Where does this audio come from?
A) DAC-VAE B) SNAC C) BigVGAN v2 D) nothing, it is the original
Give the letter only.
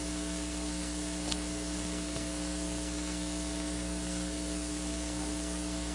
B